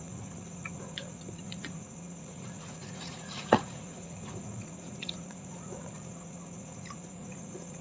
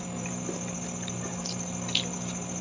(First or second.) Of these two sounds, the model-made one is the first